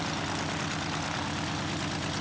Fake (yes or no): no